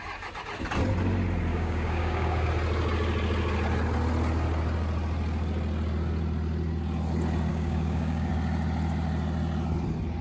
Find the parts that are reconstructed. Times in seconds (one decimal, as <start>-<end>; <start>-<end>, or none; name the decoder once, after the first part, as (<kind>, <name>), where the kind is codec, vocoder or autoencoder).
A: 1.5-2.5 (codec, DAC); 7.5-8.3